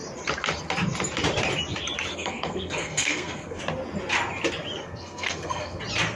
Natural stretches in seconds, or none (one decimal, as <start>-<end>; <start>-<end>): 0.0-2.1; 3.6-4.8; 5.8-6.2